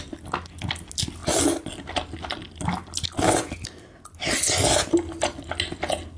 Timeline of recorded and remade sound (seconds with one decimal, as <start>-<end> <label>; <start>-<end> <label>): 0.0-6.2 recorded